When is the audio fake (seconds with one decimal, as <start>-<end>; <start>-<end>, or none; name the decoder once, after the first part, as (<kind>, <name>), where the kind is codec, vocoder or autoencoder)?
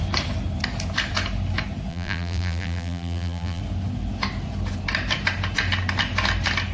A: 1.9-3.6 (vocoder, BigVGAN v2)